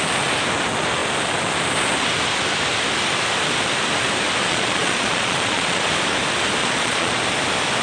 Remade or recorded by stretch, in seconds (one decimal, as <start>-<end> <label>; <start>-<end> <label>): 0.0-4.4 recorded; 4.4-5.9 remade; 5.9-6.6 recorded; 6.6-7.1 remade; 7.1-7.8 recorded

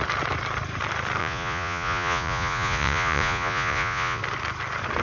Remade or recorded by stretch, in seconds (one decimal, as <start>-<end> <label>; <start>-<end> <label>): 0.0-1.2 recorded; 1.2-4.2 remade; 4.2-5.0 recorded

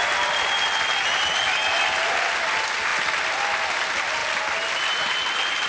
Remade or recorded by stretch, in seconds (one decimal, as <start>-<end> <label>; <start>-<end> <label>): 0.0-5.7 recorded